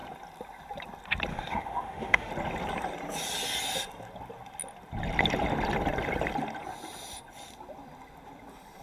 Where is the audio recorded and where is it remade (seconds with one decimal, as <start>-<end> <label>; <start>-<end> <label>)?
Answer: 0.0-1.3 recorded; 1.3-2.3 remade; 2.3-8.8 recorded